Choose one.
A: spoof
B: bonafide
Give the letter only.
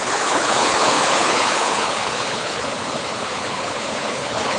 A